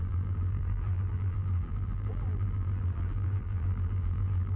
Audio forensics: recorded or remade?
remade